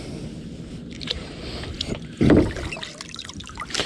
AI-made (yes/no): no